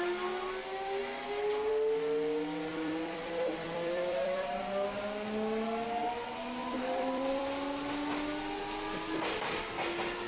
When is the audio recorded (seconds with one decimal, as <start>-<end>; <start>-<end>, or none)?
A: 0.0-2.7; 4.6-6.6; 7.5-10.3